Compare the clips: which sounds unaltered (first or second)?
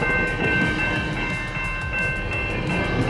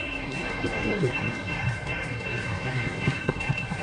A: first